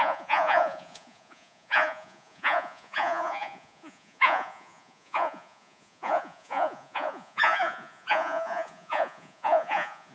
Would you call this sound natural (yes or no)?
no